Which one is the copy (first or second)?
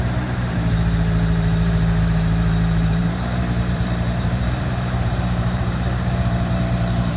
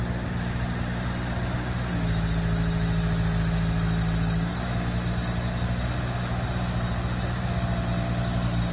first